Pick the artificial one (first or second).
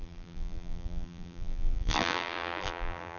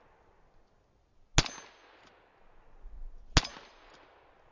first